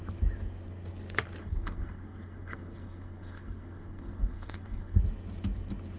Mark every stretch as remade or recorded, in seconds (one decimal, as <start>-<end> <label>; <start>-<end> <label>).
0.0-1.4 recorded; 1.4-5.0 remade; 5.0-6.0 recorded